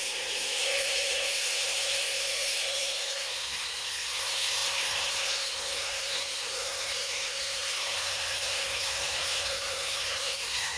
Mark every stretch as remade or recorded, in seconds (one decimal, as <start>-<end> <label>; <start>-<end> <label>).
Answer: 0.0-10.8 remade